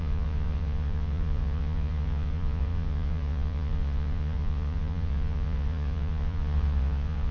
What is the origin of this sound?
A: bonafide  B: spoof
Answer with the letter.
B